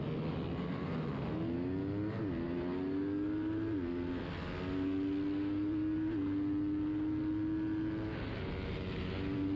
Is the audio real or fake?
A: real